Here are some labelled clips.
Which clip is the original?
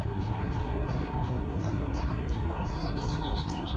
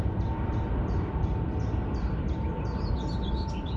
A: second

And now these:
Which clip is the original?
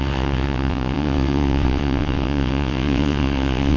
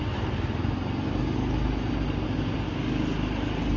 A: second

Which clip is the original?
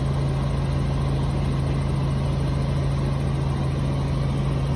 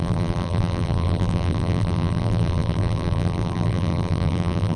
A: first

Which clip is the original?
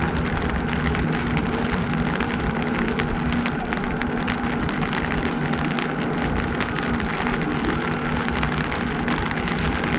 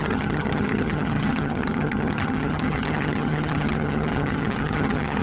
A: first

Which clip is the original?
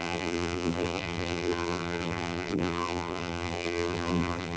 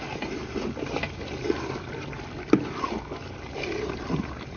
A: second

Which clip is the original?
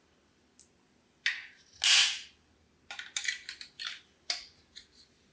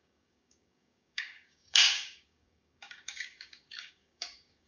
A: first